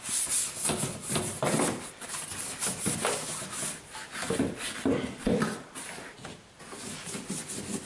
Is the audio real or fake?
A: real